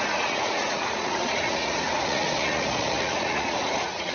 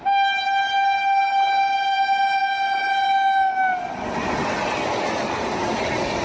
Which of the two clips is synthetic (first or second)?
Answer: first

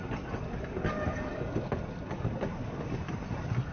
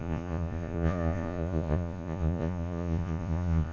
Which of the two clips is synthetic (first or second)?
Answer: second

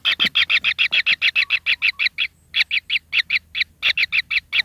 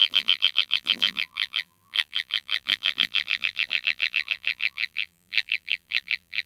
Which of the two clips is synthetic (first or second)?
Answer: second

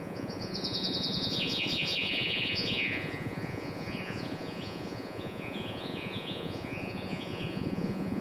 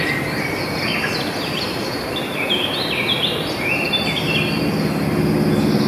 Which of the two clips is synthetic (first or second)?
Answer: first